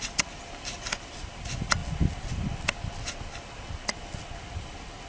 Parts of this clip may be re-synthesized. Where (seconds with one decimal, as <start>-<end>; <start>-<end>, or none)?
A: 0.0-5.1